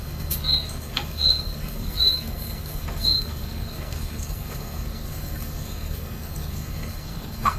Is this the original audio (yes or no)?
no